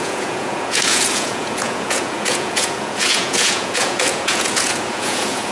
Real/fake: fake